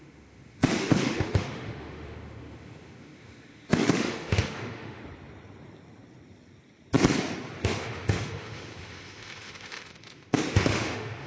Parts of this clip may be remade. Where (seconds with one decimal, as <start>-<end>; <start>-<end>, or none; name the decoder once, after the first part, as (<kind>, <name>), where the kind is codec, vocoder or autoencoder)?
0.0-5.0 (autoencoder, DAC-VAE); 7.6-11.3